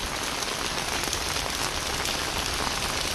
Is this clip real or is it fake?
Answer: real